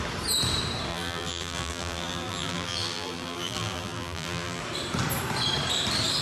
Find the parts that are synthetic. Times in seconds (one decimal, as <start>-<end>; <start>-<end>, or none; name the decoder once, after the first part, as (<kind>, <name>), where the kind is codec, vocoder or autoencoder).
0.9-4.6 (vocoder, BigVGAN v2)